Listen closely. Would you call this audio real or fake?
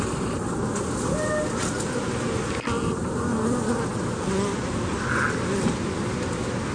real